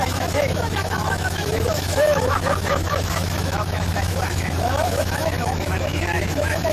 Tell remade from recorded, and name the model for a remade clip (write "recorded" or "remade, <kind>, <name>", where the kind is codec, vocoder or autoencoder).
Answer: remade, autoencoder, DAC-VAE